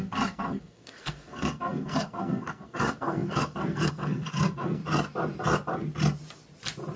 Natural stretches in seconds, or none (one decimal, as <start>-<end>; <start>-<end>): 4.8-7.0